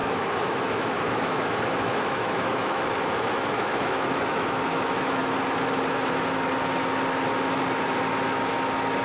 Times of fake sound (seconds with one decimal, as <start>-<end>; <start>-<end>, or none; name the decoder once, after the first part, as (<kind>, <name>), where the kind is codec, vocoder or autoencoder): 0.0-5.2 (autoencoder, DAC-VAE)